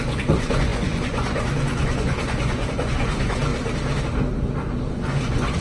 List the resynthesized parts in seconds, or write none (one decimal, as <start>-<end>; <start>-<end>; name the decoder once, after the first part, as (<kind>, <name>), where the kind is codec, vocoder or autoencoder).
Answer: 0.0-3.5 (vocoder, Vocos); 4.9-5.6